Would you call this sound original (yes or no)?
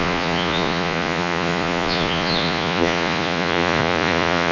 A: no